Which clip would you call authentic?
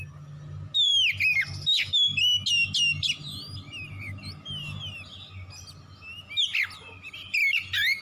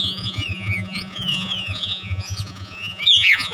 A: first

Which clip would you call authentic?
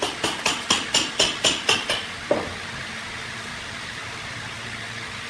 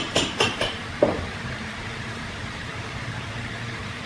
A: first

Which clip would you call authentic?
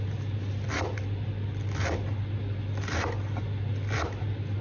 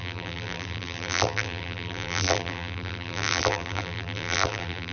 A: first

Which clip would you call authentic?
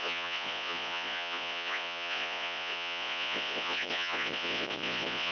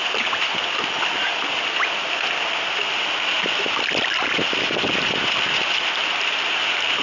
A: second